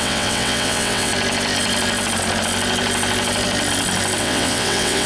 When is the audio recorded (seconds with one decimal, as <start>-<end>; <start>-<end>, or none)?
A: 1.1-4.2